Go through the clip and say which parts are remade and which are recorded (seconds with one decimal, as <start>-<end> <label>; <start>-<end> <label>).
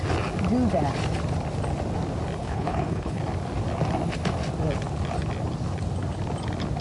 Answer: 0.0-2.4 recorded; 2.4-3.2 remade; 3.2-6.8 recorded